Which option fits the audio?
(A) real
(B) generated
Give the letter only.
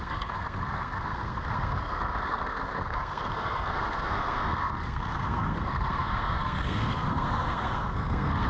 B